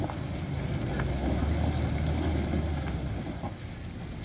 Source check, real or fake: real